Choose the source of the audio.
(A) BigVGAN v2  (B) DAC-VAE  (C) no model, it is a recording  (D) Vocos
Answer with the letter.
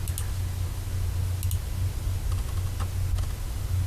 C